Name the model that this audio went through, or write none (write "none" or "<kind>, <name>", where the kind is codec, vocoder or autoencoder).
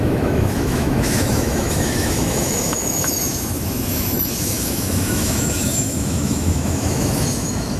autoencoder, DAC-VAE